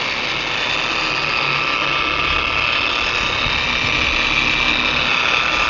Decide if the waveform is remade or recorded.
recorded